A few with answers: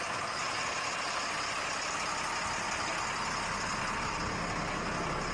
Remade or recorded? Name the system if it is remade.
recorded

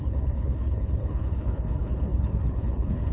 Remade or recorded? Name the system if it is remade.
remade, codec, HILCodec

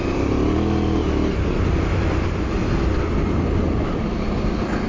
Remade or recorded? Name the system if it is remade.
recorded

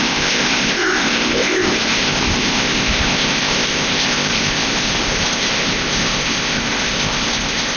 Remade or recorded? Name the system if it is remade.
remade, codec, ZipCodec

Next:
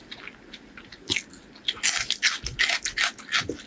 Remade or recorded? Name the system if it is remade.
recorded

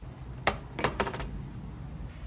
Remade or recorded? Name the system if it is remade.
recorded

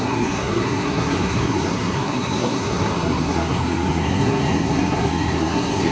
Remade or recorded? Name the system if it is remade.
remade, codec, SNAC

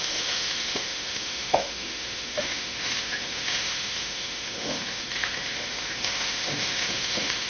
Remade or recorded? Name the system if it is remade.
remade, autoencoder, DAC-VAE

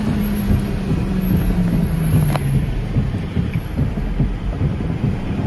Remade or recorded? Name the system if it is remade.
recorded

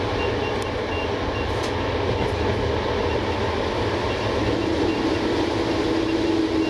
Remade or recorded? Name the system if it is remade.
recorded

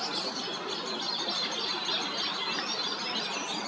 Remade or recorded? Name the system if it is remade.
recorded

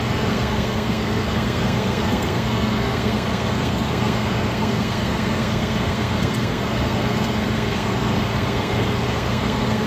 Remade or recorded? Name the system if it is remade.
remade, codec, SNAC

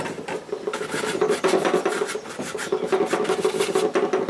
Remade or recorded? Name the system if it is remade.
recorded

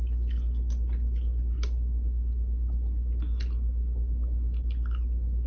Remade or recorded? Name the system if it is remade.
recorded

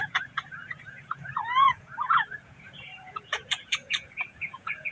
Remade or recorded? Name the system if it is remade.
remade, vocoder, Vocos